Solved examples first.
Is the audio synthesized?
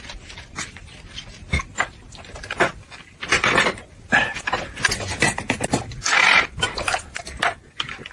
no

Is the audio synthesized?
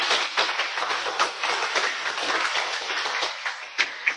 yes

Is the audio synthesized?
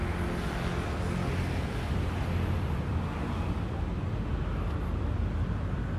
no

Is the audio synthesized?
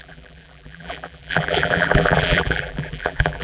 yes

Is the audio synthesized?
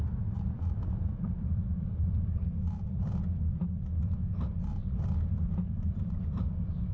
no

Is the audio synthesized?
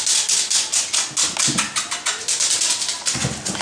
no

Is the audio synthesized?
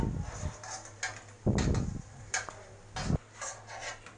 no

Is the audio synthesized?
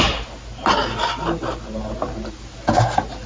no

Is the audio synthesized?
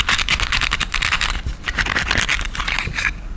no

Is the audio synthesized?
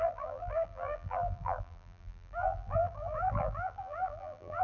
yes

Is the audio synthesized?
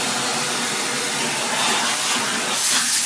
no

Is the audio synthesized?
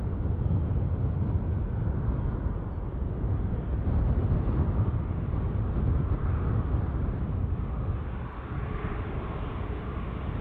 no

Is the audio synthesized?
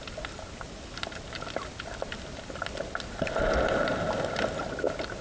no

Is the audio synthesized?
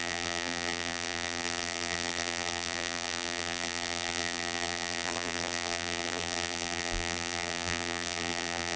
yes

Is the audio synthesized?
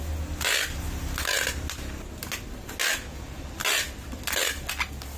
no